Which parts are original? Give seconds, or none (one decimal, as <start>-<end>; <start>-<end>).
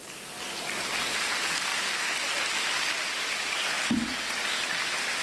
0.0-5.2